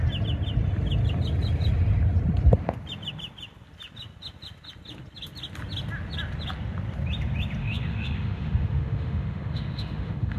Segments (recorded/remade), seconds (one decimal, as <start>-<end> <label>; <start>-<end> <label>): 0.0-7.6 recorded; 7.6-10.4 remade